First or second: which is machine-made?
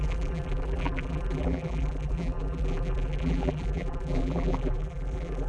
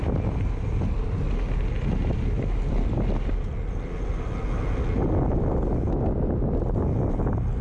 first